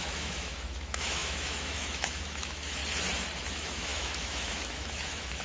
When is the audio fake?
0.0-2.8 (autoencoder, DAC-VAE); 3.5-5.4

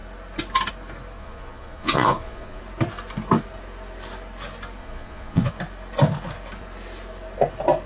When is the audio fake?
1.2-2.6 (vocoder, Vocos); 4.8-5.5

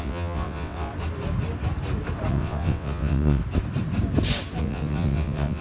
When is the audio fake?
0.0-0.9 (vocoder, WaveNeXt); 2.3-3.4; 4.6-5.6

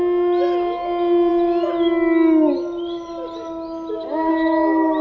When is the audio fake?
none

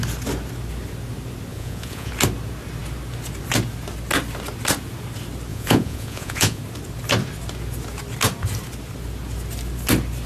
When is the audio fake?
1.5-2.1 (vocoder, Vocos); 5.5-6.6

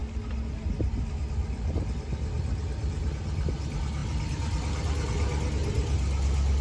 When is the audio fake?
none

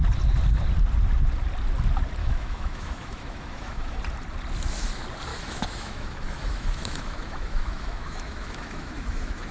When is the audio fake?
2.2-4.0 (autoencoder, DAC-VAE); 5.3-9.5